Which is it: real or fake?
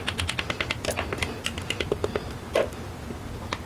real